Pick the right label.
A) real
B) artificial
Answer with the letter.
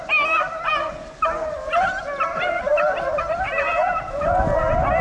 A